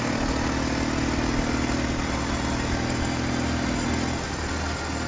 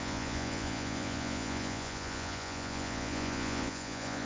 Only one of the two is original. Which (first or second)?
first